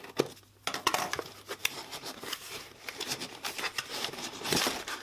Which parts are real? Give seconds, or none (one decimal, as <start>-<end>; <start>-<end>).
0.0-1.6; 4.6-5.0